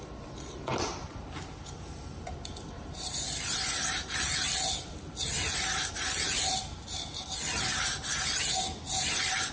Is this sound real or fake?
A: real